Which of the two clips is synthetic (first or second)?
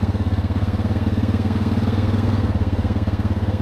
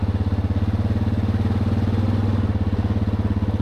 first